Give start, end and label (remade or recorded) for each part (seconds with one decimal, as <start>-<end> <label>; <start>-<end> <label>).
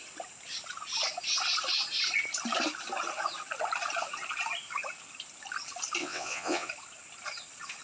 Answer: 0.0-6.0 recorded; 6.0-6.7 remade; 6.7-7.8 recorded